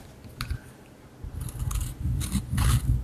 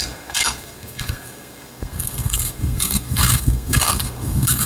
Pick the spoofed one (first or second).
second